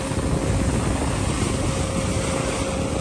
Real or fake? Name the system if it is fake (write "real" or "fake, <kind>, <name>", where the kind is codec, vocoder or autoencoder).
real